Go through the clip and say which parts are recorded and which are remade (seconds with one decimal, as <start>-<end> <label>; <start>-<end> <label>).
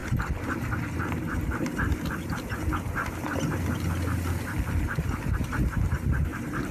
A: 0.0-6.7 recorded